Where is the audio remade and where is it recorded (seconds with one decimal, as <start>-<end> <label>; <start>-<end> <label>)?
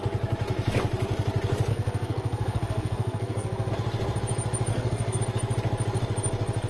0.0-1.7 recorded; 1.7-3.7 remade; 3.7-4.7 recorded; 4.7-5.2 remade; 5.2-6.7 recorded